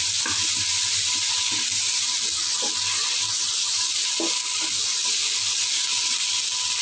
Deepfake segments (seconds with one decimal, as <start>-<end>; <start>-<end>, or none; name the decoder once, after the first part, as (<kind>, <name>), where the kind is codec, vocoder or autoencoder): none